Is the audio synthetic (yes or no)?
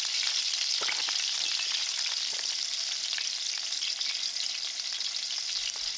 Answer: no